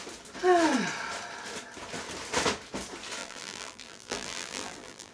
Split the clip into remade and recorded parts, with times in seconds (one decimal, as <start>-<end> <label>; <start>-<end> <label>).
0.0-3.2 recorded; 3.2-5.1 remade

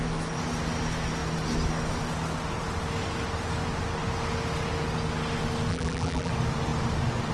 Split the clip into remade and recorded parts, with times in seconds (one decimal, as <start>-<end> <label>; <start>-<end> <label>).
0.0-5.7 recorded; 5.7-6.3 remade; 6.3-7.3 recorded

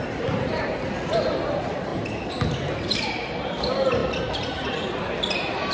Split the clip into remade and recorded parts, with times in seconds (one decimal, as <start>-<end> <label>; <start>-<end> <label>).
0.0-1.9 remade; 1.9-2.8 recorded; 2.8-5.7 remade

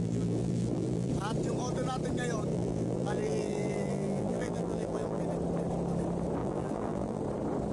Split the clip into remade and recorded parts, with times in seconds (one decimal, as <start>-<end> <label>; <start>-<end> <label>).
0.0-1.1 remade; 1.1-2.5 recorded; 2.5-5.2 remade; 5.2-6.4 recorded; 6.4-7.2 remade; 7.2-7.7 recorded

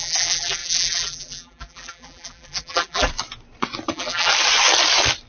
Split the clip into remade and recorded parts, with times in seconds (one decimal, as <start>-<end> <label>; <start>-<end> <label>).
0.0-3.1 remade; 3.1-3.9 recorded; 3.9-4.3 remade; 4.3-5.3 recorded

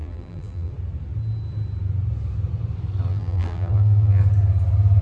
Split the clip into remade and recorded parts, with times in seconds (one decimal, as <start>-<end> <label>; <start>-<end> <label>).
0.0-0.7 remade; 0.7-3.1 recorded; 3.1-4.2 remade; 4.2-5.0 recorded

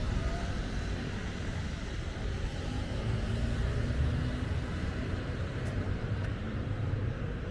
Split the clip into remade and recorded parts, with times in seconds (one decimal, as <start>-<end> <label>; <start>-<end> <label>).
0.0-7.5 remade